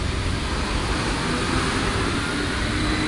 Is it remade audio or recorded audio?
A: recorded